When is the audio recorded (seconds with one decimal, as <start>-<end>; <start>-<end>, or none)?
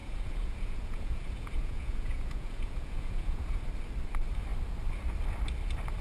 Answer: 3.6-6.0